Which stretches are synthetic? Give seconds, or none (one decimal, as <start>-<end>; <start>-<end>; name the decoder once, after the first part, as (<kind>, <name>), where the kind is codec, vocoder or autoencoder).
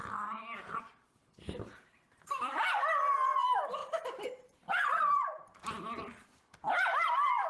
3.8-5.1 (vocoder, BigVGAN v2)